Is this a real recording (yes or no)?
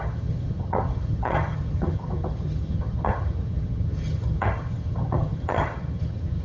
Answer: no